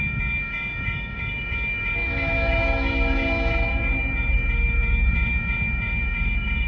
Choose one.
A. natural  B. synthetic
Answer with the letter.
B